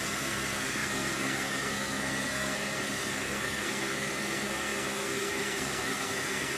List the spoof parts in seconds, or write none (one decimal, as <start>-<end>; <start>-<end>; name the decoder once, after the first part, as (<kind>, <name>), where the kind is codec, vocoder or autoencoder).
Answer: 0.0-6.6 (codec, SNAC)